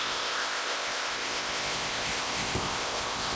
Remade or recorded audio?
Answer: remade